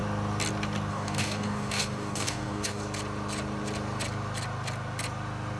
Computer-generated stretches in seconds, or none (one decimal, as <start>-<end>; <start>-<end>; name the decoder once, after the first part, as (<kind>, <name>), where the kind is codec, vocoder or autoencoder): 0.9-2.8 (codec, DAC)